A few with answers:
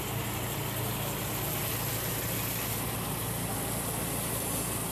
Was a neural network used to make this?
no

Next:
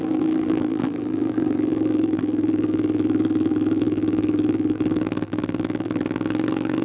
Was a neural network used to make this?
yes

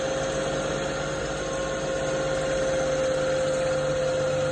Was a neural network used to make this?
no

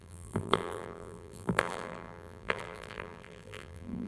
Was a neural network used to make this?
yes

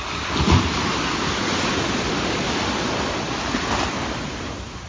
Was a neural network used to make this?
no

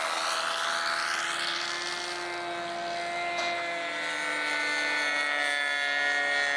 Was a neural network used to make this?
no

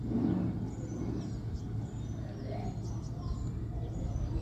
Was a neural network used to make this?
no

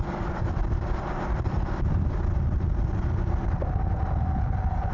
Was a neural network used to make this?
yes